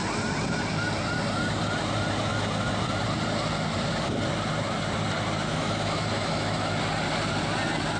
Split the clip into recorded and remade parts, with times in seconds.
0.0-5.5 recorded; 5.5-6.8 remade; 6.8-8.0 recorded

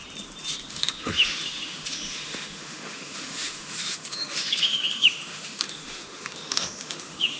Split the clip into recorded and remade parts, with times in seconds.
0.0-0.7 recorded; 0.7-7.4 remade

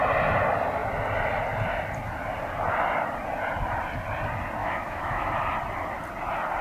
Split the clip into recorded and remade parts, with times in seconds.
0.0-4.6 recorded; 4.6-5.3 remade; 5.3-6.6 recorded

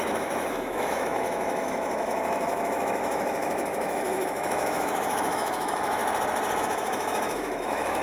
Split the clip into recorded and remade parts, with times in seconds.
0.0-6.0 remade; 6.0-6.6 recorded; 6.6-8.0 remade

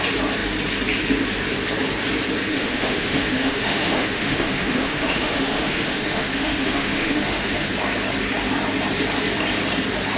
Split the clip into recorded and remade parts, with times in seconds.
0.0-2.5 recorded; 2.5-7.7 remade; 7.7-10.2 recorded

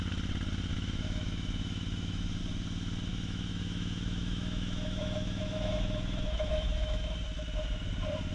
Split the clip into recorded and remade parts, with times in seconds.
0.0-0.7 recorded; 0.7-2.4 remade; 2.4-3.1 recorded; 3.1-7.1 remade; 7.1-8.3 recorded

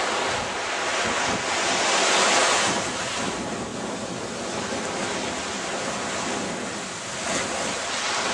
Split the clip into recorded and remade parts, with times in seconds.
0.0-8.3 recorded

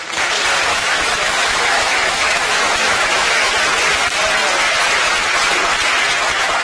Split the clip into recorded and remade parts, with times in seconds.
0.0-0.7 recorded; 0.7-3.5 remade; 3.5-6.6 recorded